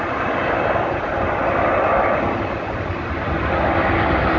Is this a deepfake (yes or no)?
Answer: no